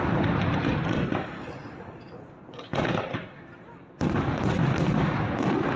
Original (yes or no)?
yes